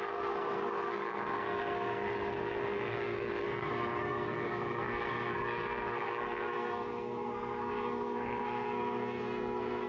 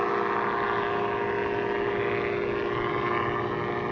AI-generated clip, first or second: first